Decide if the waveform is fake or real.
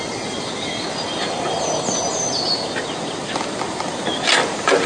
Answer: real